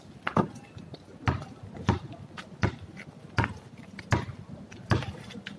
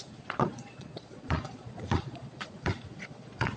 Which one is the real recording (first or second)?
first